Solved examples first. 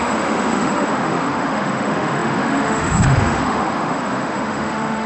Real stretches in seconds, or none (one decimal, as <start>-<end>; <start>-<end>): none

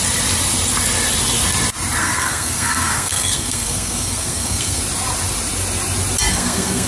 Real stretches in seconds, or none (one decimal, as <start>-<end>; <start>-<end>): 0.0-2.0; 4.8-6.3

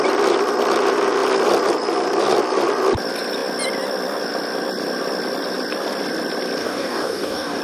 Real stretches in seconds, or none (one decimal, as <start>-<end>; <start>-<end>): 0.0-6.6

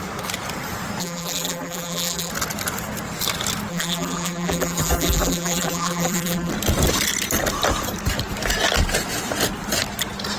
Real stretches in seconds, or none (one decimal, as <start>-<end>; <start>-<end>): 0.0-1.0; 2.3-3.7; 6.5-10.4

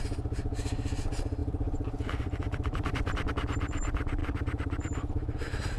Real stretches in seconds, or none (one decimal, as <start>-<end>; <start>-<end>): 0.0-1.4; 3.3-4.2

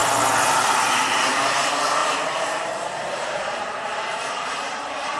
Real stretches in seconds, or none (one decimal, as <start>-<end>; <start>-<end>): 0.0-2.0

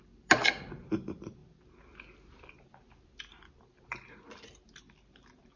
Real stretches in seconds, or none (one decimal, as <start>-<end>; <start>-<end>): 0.0-5.6